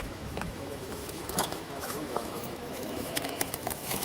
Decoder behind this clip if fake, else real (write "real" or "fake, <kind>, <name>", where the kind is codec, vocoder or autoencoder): fake, autoencoder, DAC-VAE